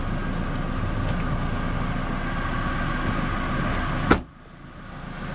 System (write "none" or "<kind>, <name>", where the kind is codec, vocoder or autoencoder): none